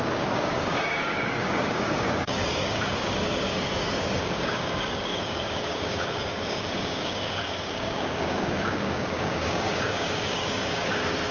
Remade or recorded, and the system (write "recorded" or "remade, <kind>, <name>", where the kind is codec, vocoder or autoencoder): remade, codec, DAC